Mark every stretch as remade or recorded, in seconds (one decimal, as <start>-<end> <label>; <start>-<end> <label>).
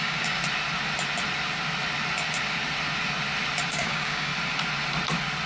0.0-0.4 remade; 0.4-3.7 recorded; 3.7-4.3 remade; 4.3-5.5 recorded